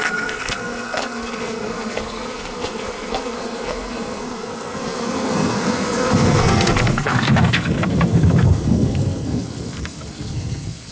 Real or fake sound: fake